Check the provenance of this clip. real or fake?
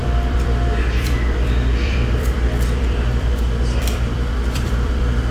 fake